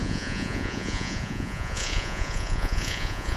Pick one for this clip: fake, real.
fake